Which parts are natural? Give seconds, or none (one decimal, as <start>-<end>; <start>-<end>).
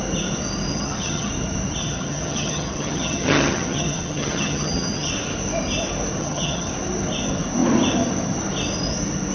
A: 0.0-0.7; 1.3-1.8; 5.1-6.2; 6.7-9.3